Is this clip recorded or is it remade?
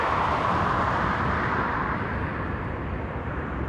remade